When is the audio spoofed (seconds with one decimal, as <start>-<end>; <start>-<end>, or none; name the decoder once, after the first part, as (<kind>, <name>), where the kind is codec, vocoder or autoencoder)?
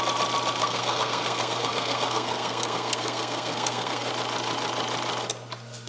0.6-4.1 (codec, SNAC)